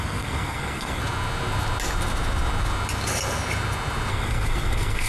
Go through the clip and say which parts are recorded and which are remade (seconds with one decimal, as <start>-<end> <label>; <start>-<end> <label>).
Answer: 0.0-1.0 remade; 1.0-4.1 recorded; 4.1-5.1 remade